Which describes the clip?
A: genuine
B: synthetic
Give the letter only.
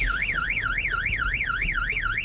A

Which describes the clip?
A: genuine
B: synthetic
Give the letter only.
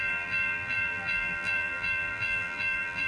B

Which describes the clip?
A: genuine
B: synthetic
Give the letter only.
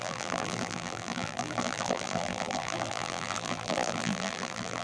B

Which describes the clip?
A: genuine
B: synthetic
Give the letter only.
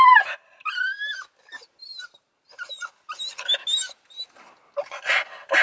A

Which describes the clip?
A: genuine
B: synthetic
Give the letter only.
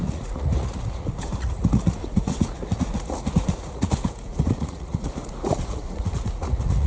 B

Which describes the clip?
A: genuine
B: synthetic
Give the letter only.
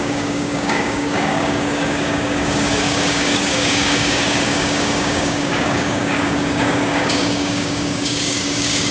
B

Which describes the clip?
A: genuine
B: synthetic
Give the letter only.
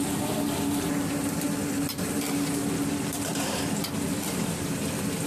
B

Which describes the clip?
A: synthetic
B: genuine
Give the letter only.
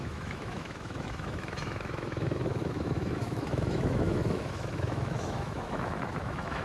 A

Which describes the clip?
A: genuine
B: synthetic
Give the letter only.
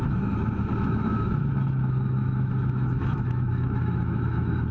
B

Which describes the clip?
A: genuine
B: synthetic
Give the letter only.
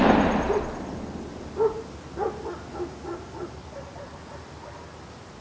A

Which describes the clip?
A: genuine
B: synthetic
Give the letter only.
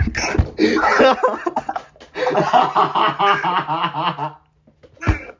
A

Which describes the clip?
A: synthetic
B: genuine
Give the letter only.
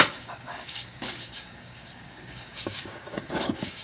A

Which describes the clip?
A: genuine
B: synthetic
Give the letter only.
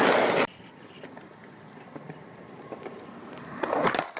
B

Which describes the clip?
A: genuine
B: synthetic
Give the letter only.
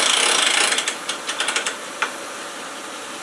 B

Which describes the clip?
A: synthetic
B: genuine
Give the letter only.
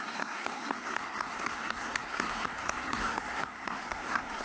A